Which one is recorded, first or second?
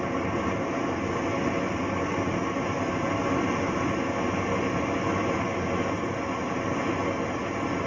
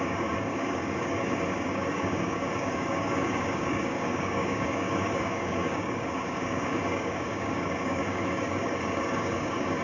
first